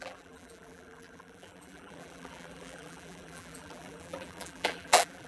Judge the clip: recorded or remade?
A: remade